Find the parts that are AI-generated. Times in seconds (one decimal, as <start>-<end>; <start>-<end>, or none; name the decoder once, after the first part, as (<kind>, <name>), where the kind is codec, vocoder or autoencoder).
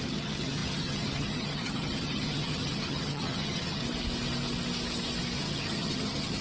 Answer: 0.0-3.8 (vocoder, HiFi-GAN); 5.4-6.4